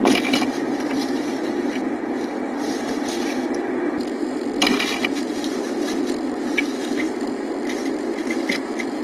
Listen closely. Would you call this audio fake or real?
real